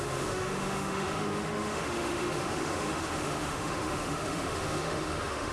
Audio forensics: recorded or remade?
remade